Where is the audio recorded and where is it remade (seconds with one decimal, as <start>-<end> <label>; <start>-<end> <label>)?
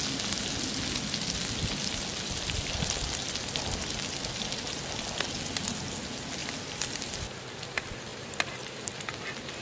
0.0-6.4 recorded; 6.4-7.5 remade; 7.5-9.6 recorded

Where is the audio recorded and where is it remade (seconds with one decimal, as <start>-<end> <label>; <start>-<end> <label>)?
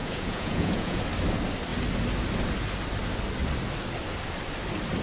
0.0-1.0 remade; 1.0-5.0 recorded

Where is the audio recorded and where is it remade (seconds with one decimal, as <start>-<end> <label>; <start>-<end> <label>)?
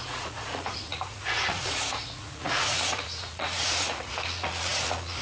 0.0-5.2 remade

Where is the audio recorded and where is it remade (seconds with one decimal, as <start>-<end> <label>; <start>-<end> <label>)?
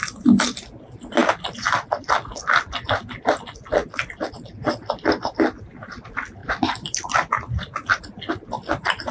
0.0-6.4 recorded; 6.4-8.0 remade; 8.0-9.1 recorded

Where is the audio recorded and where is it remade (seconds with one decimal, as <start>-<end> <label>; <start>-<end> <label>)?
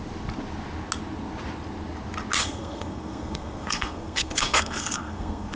0.0-2.4 recorded; 2.4-5.6 remade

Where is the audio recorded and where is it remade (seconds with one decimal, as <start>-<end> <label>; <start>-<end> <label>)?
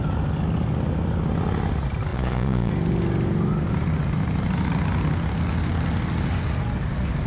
0.0-2.1 recorded; 2.1-2.7 remade; 2.7-7.3 recorded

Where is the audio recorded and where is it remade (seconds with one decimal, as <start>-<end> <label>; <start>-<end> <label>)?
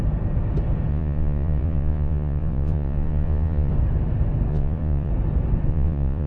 0.0-0.9 recorded; 0.9-3.7 remade; 3.7-4.5 recorded; 4.5-5.1 remade; 5.1-5.7 recorded; 5.7-6.3 remade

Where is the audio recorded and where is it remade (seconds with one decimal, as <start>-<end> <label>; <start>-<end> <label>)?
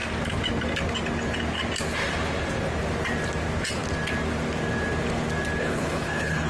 0.0-5.6 recorded; 5.6-6.5 remade